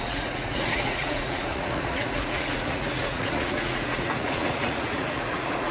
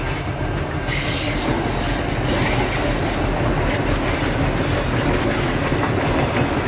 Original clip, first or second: second